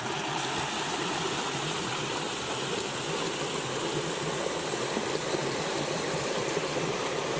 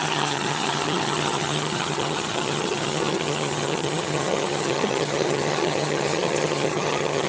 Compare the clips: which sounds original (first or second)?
first